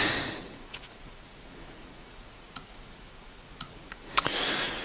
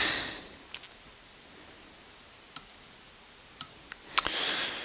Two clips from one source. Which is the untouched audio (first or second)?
second